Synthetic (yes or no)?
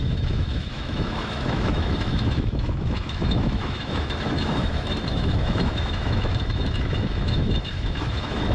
yes